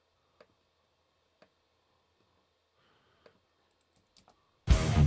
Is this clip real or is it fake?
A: real